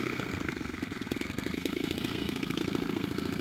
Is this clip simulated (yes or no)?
yes